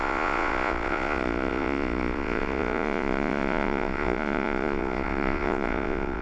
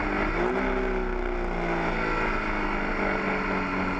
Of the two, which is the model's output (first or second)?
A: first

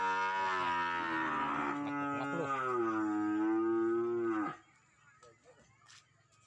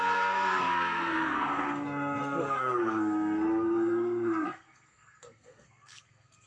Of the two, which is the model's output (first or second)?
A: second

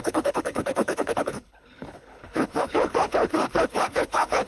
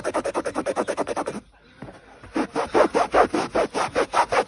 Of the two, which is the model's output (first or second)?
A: first